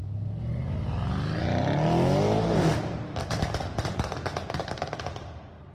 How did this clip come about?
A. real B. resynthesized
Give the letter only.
A